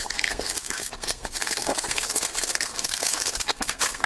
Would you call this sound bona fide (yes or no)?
no